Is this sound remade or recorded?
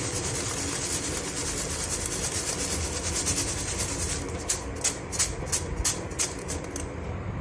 recorded